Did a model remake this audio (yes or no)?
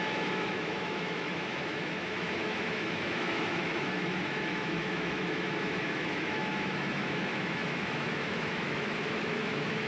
yes